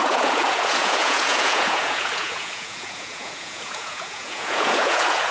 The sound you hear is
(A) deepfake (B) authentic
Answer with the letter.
A